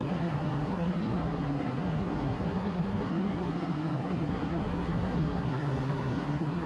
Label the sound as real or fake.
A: fake